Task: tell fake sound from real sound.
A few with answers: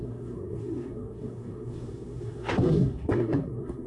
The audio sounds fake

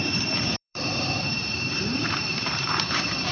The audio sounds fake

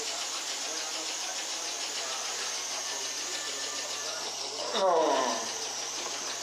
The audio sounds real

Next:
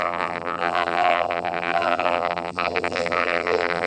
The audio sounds fake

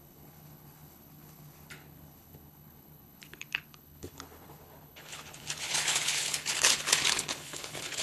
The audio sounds fake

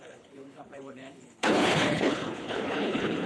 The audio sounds fake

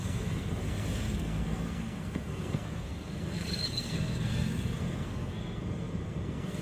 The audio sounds fake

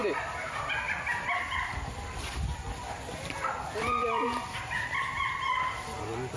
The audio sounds real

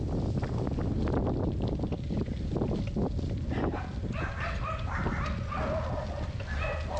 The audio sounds real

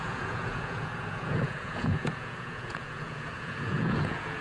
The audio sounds fake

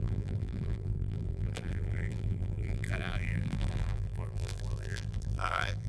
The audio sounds fake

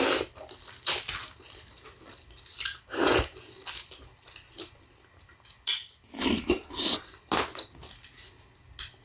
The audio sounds real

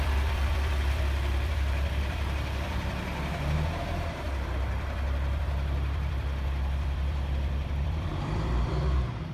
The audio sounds fake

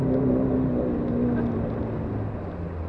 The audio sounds real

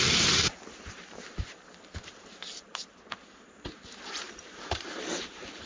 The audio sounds fake